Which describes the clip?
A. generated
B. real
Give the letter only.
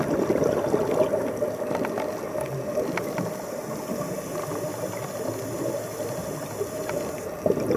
B